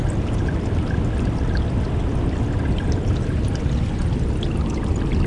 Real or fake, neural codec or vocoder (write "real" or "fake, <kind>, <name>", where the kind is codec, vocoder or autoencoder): real